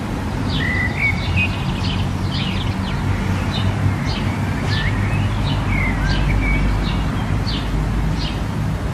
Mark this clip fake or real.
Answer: real